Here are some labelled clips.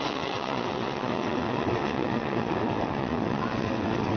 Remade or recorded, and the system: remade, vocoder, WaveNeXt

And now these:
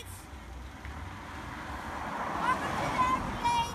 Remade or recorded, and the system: recorded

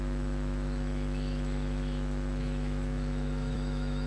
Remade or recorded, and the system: remade, autoencoder, DAC-VAE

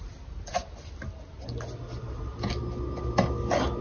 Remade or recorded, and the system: recorded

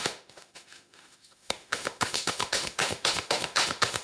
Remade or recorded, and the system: remade, autoencoder, DAC-VAE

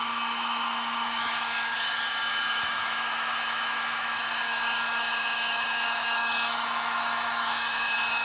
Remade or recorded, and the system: remade, autoencoder, DAC-VAE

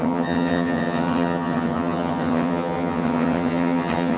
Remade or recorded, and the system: remade, vocoder, HiFi-GAN